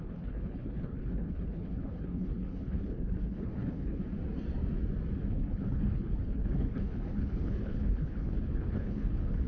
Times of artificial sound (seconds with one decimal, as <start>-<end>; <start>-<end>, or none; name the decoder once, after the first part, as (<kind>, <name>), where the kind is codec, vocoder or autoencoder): 0.0-4.0 (codec, HILCodec); 5.3-9.5